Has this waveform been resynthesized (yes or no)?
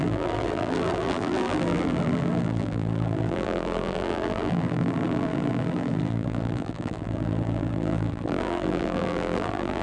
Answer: yes